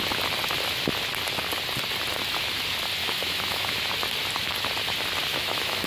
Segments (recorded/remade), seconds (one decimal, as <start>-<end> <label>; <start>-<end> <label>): 0.0-3.0 recorded; 3.0-3.8 remade; 3.8-5.3 recorded; 5.3-5.9 remade